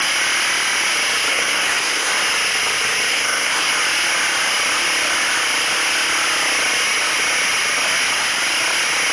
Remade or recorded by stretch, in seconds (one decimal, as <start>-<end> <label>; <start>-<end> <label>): 0.0-1.3 recorded; 1.3-2.1 remade; 2.1-3.1 recorded; 3.1-3.7 remade; 3.7-9.1 recorded